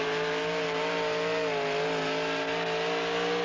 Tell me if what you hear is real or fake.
real